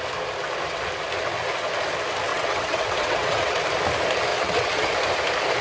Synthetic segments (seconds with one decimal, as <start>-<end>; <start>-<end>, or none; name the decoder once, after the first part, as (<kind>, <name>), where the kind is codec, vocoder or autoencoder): 2.3-3.6 (vocoder, WaveNeXt); 4.3-4.9